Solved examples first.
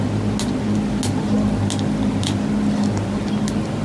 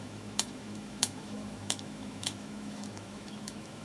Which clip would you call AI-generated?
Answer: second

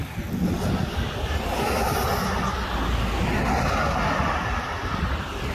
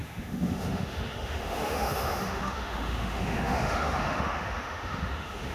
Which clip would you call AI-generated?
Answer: second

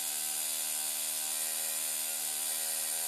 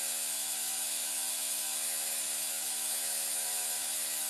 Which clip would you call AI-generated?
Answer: second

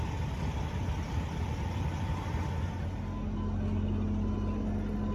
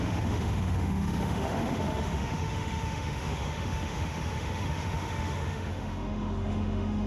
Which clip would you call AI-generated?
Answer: second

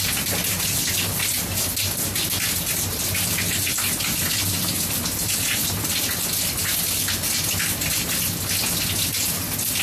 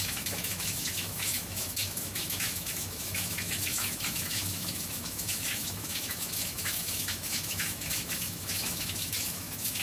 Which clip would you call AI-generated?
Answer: second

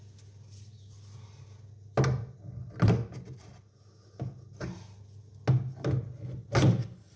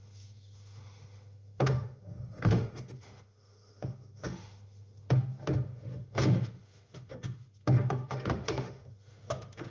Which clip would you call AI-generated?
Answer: second